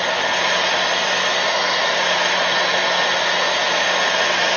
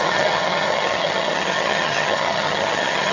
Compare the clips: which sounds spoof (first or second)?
second